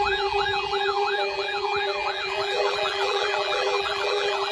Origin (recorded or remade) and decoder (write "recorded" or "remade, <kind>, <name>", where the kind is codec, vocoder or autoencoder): remade, vocoder, BigVGAN v2